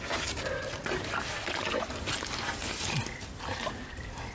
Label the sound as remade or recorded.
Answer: recorded